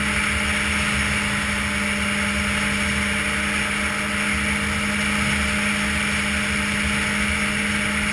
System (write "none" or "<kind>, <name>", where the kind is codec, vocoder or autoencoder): none